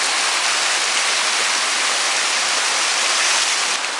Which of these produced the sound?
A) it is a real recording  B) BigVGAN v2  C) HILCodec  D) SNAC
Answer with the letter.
A